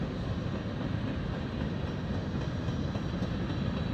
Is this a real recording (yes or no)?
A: yes